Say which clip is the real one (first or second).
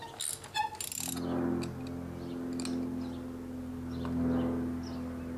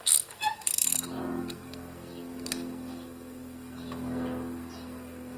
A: first